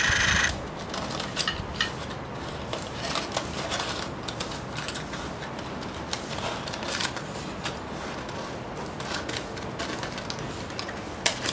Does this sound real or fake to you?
real